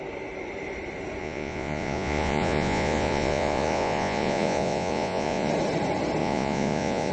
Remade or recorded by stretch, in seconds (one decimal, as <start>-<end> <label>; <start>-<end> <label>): 0.0-1.2 recorded; 1.2-5.5 remade; 5.5-6.2 recorded; 6.2-7.1 remade